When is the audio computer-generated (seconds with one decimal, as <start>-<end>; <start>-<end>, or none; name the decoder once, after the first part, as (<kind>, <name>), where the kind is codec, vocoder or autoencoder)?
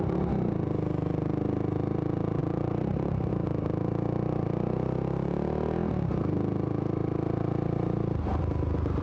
2.4-3.3 (vocoder, BigVGAN v2)